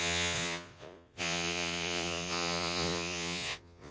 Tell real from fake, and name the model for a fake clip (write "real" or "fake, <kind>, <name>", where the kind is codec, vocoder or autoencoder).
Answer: fake, vocoder, Vocos